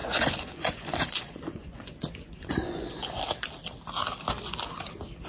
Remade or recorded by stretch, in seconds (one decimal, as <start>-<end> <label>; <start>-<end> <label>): 0.0-3.2 remade; 3.2-5.3 recorded